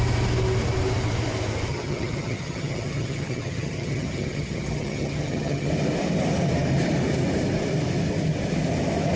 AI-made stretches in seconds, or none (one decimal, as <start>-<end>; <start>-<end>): 1.7-5.7